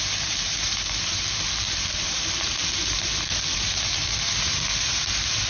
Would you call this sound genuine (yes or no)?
no